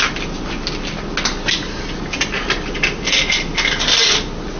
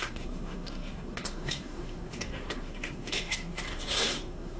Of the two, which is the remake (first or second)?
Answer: second